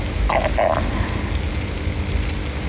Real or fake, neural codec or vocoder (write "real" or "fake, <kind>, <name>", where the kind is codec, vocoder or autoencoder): real